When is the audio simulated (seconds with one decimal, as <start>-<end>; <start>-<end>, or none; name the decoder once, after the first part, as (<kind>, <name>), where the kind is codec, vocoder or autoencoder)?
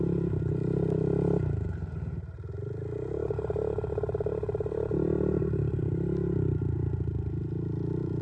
0.0-6.8 (vocoder, BigVGAN v2); 7.4-8.2